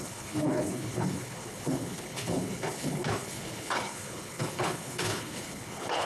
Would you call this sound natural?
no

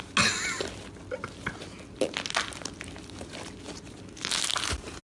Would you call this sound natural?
yes